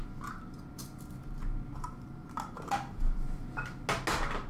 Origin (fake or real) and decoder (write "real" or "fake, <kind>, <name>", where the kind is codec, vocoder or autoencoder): real